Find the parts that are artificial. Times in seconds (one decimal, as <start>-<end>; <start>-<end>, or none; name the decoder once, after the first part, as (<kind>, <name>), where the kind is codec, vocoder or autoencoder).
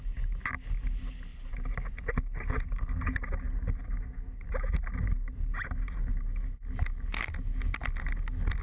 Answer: none